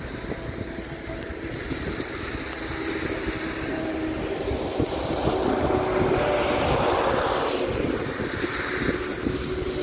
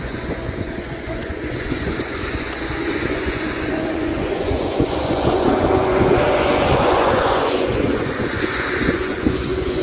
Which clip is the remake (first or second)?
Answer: second